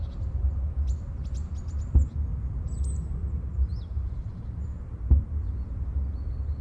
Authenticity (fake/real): real